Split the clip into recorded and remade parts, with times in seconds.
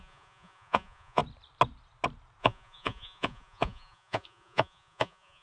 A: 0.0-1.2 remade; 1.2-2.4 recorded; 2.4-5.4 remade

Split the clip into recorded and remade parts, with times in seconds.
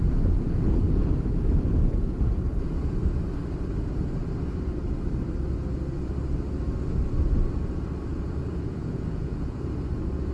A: 0.0-0.8 remade; 0.8-8.1 recorded; 8.1-9.6 remade; 9.6-10.3 recorded